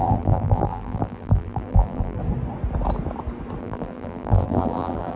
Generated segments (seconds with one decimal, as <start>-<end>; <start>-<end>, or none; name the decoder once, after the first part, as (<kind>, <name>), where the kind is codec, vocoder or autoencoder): 0.0-2.2 (vocoder, BigVGAN v2); 3.6-5.2